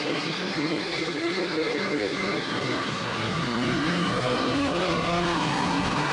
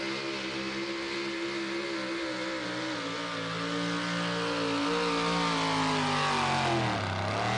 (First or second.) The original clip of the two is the second